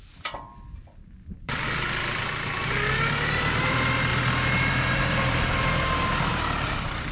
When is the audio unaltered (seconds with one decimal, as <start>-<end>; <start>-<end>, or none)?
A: 4.1-6.3